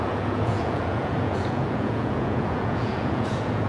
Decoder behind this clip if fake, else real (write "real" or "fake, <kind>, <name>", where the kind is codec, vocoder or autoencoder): fake, vocoder, Vocos